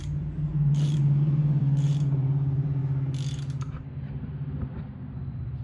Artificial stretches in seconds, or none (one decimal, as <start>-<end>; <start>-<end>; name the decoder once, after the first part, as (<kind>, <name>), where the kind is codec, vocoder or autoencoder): 0.0-2.8 (vocoder, BigVGAN v2); 3.4-5.6